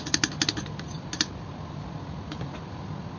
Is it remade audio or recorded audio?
recorded